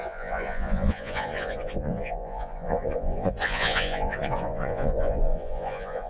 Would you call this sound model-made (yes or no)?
yes